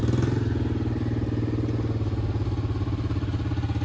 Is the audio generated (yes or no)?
no